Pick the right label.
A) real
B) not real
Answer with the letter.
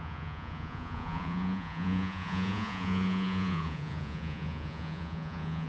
B